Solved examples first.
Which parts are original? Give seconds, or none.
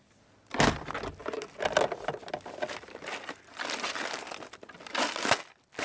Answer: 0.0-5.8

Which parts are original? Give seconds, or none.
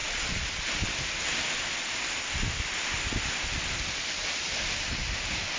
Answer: 0.5-5.6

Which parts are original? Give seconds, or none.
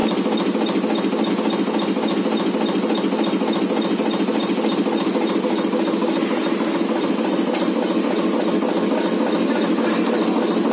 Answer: 0.0-4.3; 4.8-6.4; 8.0-10.7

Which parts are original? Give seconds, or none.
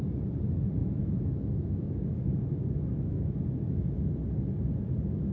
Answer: 0.0-0.8; 4.0-5.3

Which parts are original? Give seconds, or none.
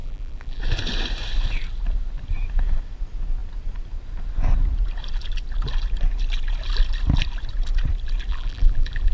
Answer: 0.6-8.3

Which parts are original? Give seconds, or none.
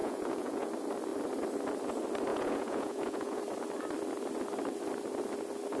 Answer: 0.7-2.3; 3.4-5.8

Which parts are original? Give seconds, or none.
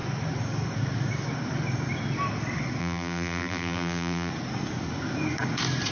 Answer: 0.0-2.8; 4.3-5.9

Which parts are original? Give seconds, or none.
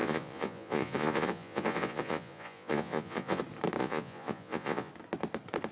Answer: 3.4-3.8; 4.9-5.7